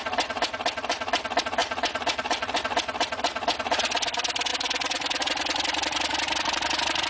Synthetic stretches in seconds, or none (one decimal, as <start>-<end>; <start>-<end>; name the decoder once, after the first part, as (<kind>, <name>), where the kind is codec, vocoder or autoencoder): 1.6-2.6 (vocoder, BigVGAN v2); 4.5-5.2; 6.1-7.1